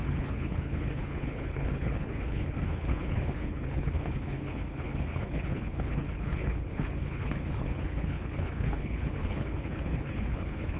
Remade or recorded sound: remade